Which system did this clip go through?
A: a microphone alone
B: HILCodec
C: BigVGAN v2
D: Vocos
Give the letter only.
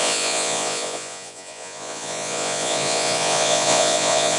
D